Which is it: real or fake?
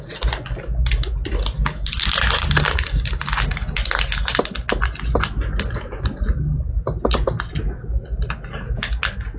real